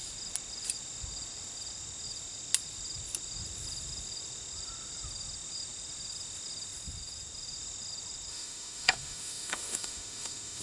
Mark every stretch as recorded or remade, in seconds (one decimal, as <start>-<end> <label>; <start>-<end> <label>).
0.0-8.3 recorded; 8.3-10.6 remade